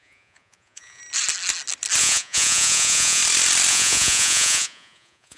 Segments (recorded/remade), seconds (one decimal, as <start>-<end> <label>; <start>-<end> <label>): 0.0-1.0 remade; 1.0-2.0 recorded; 2.0-3.2 remade; 3.2-3.7 recorded; 3.7-5.4 remade